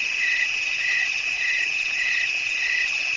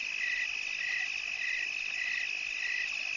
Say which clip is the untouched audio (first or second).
second